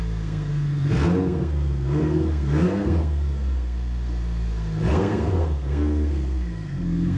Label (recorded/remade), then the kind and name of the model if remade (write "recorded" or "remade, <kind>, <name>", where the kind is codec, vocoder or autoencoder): remade, codec, SNAC